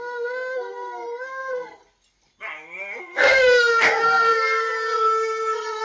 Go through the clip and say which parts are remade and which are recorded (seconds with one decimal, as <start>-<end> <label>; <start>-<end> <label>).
0.0-1.8 remade; 1.8-3.0 recorded; 3.0-5.8 remade